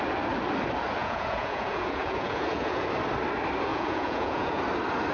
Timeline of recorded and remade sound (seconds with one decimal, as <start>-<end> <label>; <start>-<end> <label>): 0.0-1.0 recorded; 1.0-2.9 remade; 2.9-3.7 recorded; 3.7-4.6 remade; 4.6-5.1 recorded